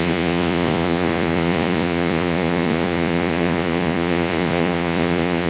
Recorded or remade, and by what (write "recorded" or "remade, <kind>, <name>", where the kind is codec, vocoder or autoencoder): remade, vocoder, Vocos